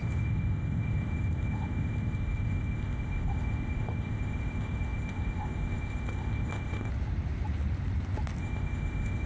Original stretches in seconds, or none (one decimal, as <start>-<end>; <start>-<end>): 6.9-8.4